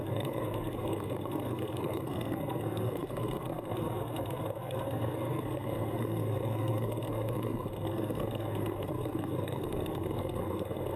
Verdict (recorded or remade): remade